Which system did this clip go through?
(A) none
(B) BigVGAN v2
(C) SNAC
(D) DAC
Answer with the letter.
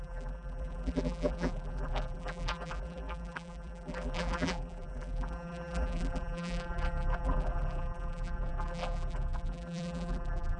B